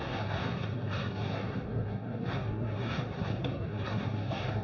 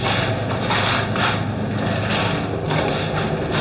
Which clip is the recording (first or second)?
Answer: second